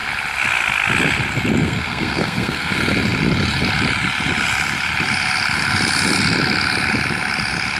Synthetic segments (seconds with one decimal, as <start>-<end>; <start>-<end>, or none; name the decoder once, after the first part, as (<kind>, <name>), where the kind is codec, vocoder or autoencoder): 1.6-2.7 (codec, SNAC)